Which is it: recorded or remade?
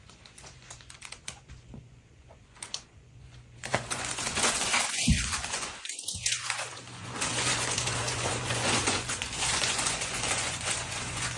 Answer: remade